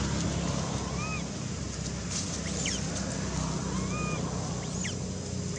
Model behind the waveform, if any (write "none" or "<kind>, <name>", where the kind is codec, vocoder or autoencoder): none